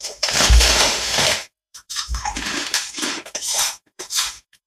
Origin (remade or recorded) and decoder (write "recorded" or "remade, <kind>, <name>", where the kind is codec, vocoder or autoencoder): remade, autoencoder, DAC-VAE